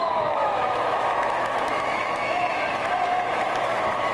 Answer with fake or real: fake